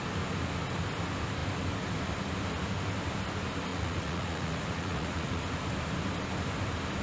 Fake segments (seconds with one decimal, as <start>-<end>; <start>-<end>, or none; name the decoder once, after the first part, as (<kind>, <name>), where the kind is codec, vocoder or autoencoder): 3.7-5.4 (vocoder, Vocos)